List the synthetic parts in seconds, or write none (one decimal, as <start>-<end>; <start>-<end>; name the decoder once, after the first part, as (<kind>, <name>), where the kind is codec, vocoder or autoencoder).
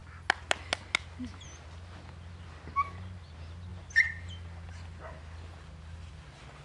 none